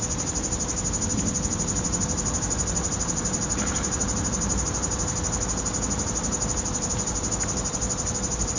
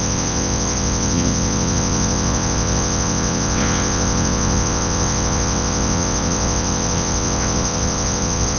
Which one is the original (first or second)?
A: first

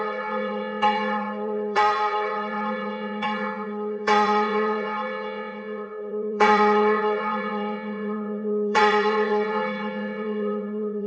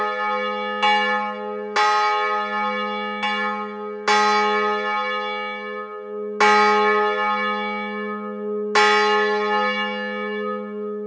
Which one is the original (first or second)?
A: second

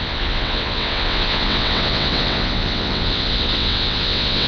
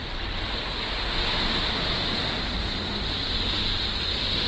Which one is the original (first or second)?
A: second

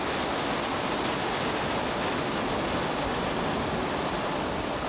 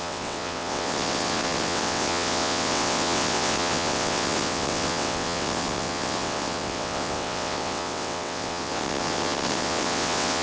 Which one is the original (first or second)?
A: first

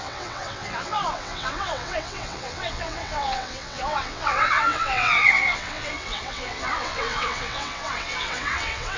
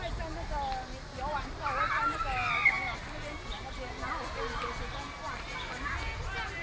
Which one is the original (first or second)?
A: second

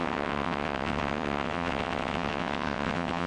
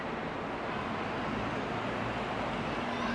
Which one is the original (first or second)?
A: second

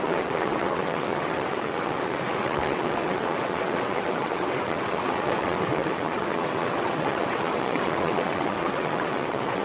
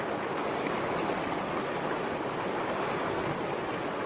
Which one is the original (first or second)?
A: second